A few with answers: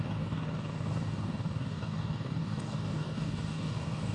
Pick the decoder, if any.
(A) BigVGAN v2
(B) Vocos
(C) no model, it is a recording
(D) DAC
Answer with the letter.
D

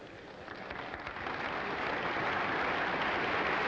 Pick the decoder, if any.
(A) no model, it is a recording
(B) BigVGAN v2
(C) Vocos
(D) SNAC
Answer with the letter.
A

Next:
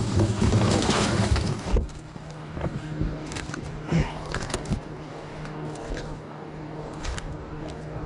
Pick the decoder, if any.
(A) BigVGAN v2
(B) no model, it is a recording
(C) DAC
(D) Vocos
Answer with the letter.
C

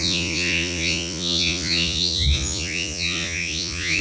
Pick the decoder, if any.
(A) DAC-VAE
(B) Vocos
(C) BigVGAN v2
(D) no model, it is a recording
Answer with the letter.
B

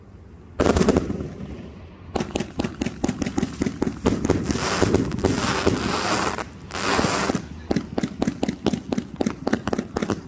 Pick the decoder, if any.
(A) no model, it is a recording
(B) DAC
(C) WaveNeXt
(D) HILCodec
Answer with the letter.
A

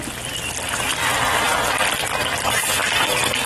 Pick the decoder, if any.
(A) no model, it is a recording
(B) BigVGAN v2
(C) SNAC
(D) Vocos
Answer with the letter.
A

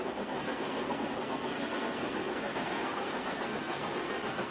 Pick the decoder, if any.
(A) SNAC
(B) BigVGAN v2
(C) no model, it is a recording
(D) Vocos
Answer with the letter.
A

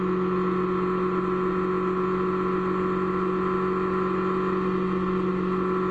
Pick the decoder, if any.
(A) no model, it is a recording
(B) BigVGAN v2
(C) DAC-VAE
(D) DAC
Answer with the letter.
A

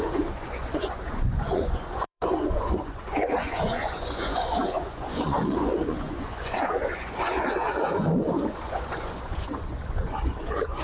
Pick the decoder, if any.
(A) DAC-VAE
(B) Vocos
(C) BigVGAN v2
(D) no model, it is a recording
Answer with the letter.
B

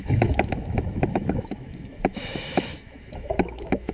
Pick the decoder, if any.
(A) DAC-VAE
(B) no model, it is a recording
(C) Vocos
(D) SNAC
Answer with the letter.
A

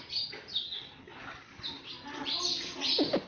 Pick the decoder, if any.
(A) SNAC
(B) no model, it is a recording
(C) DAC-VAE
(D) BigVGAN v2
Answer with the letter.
B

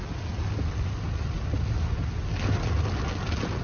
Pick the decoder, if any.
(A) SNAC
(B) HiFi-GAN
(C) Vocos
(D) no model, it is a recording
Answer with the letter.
D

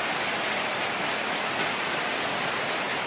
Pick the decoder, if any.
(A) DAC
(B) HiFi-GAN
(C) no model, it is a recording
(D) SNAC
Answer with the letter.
C